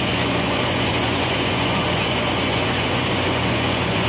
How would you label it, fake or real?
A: fake